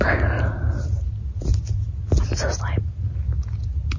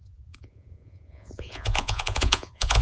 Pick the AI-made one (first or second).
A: second